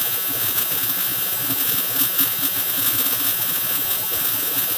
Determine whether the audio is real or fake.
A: fake